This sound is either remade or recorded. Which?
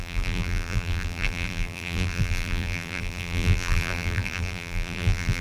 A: remade